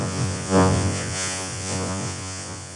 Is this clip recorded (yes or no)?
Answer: no